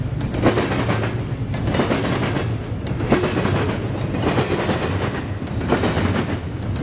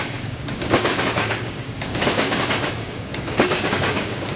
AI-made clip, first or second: second